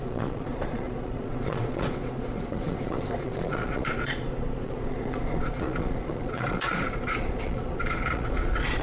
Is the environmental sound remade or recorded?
remade